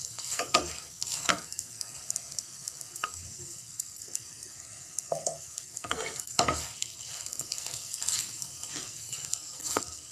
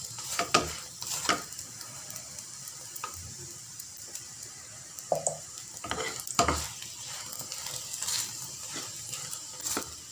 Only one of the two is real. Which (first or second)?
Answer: second